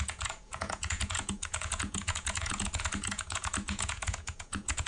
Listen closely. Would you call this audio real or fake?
fake